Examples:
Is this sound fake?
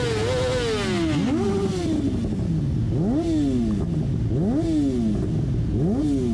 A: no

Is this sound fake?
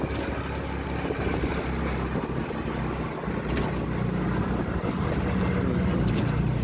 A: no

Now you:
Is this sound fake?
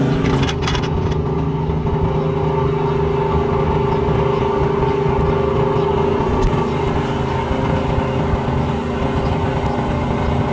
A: no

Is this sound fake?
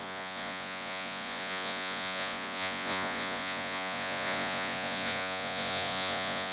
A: yes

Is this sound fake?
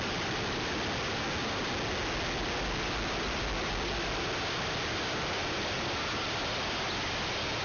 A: no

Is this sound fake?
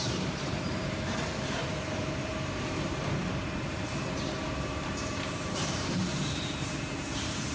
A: yes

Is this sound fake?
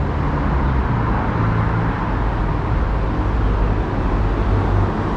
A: no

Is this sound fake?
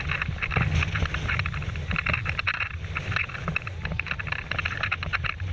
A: no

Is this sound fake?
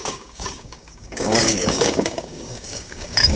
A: yes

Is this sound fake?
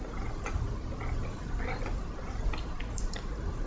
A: no